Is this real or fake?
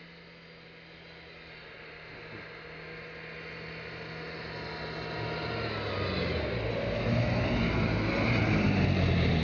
real